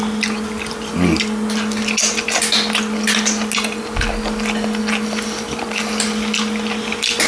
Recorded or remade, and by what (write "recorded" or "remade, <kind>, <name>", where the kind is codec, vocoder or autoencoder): recorded